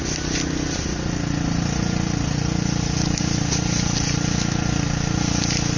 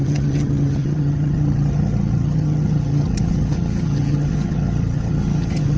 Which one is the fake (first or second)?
second